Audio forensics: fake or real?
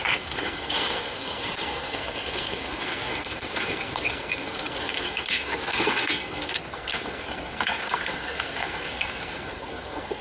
fake